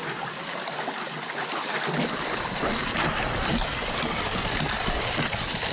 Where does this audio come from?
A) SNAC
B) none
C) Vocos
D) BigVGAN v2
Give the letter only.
B